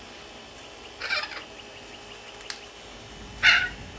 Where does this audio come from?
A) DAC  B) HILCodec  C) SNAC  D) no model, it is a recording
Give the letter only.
D